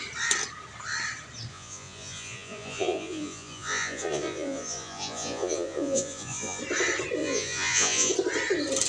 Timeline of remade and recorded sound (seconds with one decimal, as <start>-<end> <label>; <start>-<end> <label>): 0.0-1.5 recorded; 1.5-6.6 remade; 6.6-7.2 recorded; 7.2-8.1 remade; 8.1-8.9 recorded